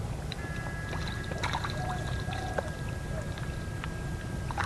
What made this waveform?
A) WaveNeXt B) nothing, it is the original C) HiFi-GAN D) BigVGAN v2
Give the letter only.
D